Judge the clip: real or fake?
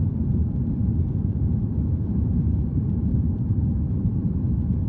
fake